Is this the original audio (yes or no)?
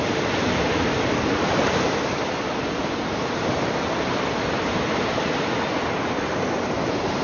no